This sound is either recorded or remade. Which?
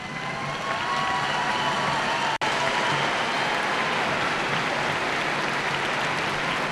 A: recorded